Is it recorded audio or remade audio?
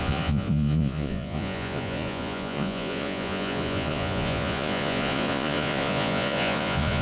remade